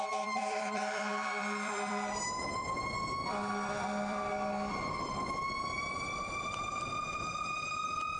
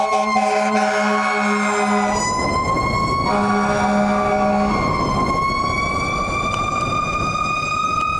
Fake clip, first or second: first